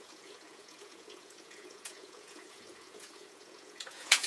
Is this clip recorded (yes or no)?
no